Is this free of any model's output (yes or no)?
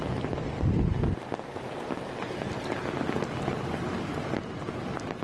yes